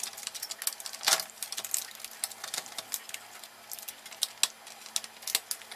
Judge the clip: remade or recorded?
recorded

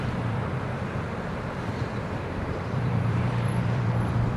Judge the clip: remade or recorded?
remade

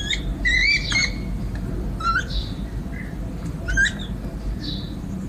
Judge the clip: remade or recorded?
remade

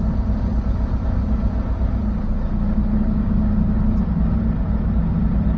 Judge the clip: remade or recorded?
recorded